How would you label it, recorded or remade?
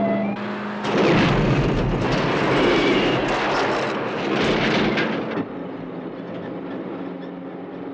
recorded